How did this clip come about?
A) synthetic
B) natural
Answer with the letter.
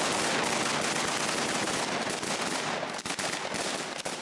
B